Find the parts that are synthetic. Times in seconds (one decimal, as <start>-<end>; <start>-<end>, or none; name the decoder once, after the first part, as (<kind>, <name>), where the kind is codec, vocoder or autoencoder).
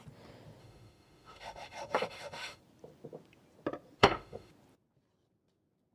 0.6-2.6 (autoencoder, DAC-VAE); 4.0-4.5